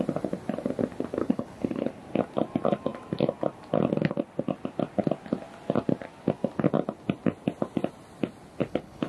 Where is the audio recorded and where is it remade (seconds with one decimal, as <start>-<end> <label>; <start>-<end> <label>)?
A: 0.0-1.2 recorded; 1.2-1.9 remade; 1.9-8.6 recorded; 8.6-9.1 remade